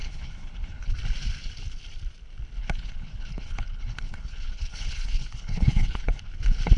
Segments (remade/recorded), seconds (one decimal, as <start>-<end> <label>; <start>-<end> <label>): 0.0-0.9 remade; 0.9-2.6 recorded; 2.6-6.3 remade; 6.3-6.8 recorded